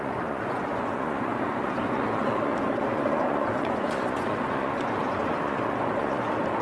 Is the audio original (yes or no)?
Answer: no